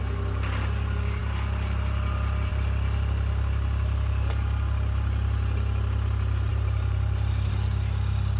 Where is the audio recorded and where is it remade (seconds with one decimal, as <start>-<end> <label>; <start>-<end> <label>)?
0.0-6.5 recorded; 6.5-7.5 remade; 7.5-8.4 recorded